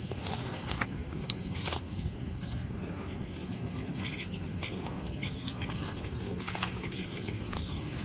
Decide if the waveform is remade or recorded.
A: remade